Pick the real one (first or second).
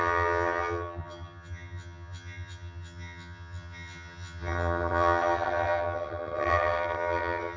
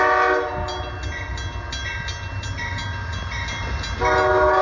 second